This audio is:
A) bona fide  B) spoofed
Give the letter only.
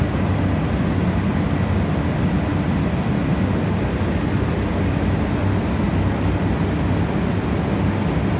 A